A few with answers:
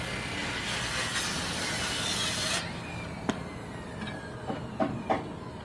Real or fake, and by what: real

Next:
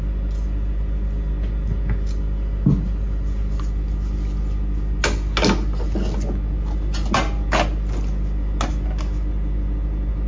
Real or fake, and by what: real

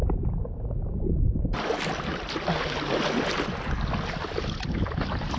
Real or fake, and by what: real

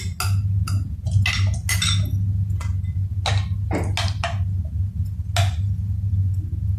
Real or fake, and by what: real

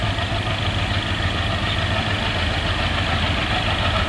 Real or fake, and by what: real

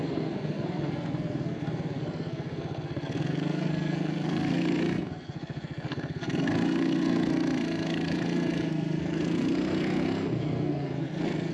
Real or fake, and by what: fake, codec, SNAC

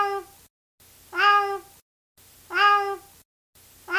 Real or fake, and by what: real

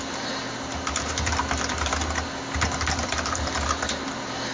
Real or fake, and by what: real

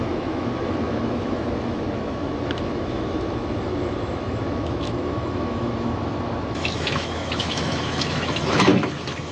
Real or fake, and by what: fake, autoencoder, DAC-VAE